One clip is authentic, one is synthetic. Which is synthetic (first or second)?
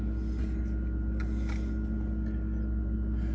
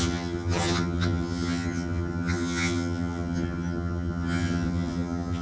second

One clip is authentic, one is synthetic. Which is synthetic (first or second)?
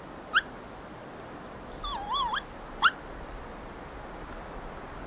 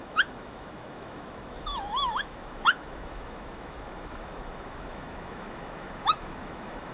second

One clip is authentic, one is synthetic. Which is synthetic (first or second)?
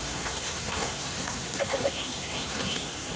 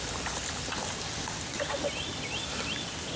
first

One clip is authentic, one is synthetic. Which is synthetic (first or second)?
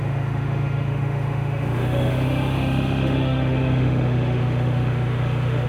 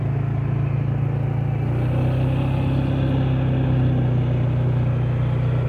first